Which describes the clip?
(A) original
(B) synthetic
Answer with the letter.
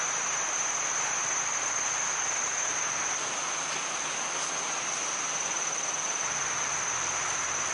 A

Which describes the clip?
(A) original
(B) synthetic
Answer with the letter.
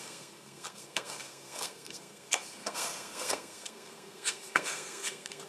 B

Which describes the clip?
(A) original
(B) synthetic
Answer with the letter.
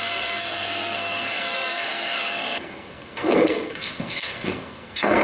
B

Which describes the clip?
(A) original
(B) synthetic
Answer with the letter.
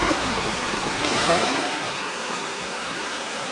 B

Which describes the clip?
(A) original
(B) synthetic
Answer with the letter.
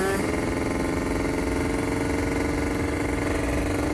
A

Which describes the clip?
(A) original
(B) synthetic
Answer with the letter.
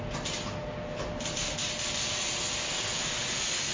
A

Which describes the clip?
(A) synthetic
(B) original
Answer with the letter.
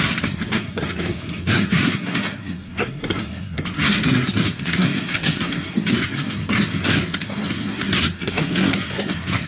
A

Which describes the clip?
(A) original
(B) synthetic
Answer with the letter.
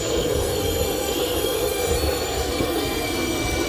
B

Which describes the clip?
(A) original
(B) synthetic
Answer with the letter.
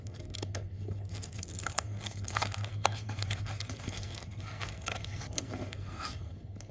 B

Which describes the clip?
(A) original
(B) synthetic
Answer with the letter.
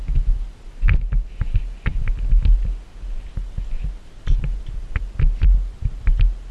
A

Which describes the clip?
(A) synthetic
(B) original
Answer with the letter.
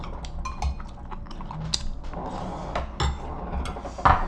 B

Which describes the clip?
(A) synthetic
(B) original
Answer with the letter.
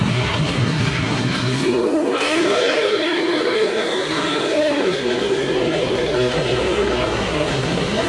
A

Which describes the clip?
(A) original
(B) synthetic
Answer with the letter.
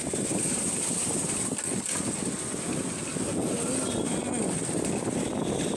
A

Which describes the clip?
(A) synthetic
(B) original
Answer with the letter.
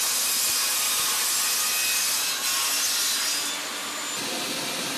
B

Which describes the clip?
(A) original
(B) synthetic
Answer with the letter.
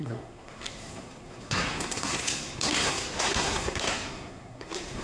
B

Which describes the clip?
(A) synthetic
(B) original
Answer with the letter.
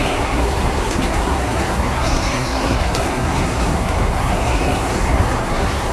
A